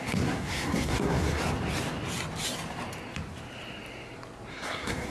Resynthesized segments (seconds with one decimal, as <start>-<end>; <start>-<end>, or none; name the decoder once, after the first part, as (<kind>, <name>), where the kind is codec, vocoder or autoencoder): 0.0-1.4 (codec, SNAC); 4.5-5.1